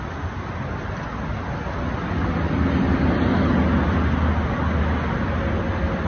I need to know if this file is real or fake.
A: real